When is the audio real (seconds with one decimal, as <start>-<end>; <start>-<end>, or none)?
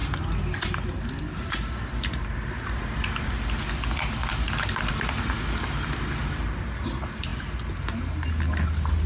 0.0-9.1